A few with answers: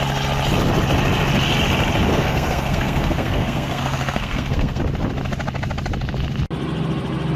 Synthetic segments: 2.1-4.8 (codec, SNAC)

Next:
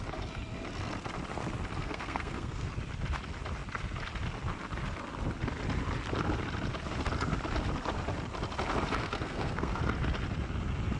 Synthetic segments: 1.8-2.7 (codec, SNAC); 9.0-9.8

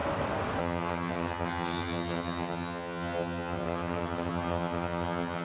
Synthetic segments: 0.6-5.4 (vocoder, HiFi-GAN)

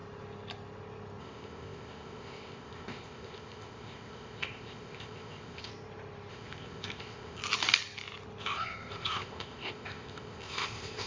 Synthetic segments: 1.2-5.7 (codec, ZipCodec); 6.3-7.4; 8.4-11.1

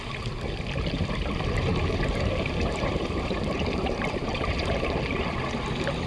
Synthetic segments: 1.7-5.4 (vocoder, BigVGAN v2)

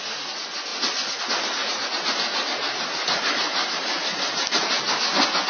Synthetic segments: 1.6-4.9 (vocoder, BigVGAN v2)